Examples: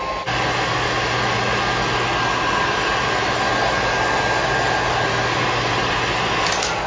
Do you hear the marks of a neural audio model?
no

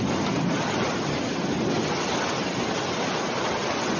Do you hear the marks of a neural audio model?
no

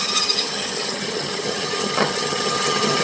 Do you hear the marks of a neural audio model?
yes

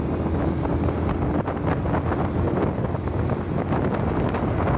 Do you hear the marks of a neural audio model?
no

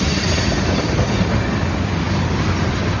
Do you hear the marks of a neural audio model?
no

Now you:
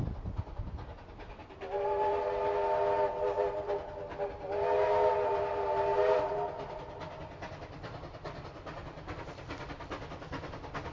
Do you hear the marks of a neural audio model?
no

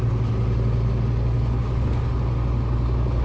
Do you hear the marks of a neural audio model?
no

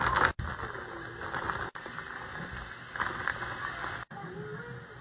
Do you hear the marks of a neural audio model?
no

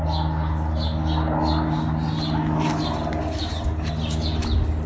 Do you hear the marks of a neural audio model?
no